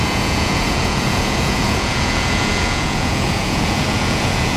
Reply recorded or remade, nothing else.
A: remade